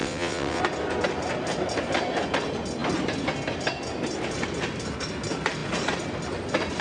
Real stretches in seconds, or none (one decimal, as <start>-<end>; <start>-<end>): 0.6-6.8